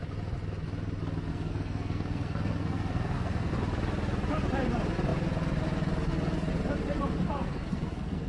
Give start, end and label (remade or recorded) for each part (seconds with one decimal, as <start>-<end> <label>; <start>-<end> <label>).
0.0-1.3 recorded; 1.3-3.5 remade; 3.5-7.4 recorded; 7.4-8.3 remade